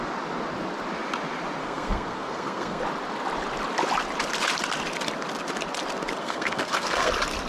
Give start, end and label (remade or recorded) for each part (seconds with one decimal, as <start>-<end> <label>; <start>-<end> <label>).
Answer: 0.0-1.6 recorded; 1.6-2.8 remade; 2.8-6.2 recorded; 6.2-7.1 remade; 7.1-7.5 recorded